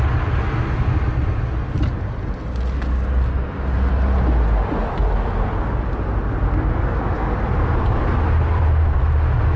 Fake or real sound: real